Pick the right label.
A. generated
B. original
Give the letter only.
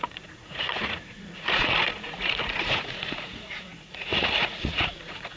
A